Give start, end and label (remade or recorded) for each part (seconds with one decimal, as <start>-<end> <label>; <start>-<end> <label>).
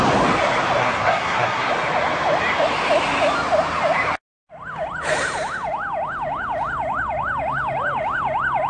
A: 0.0-0.8 recorded; 0.8-1.7 remade; 1.7-8.7 recorded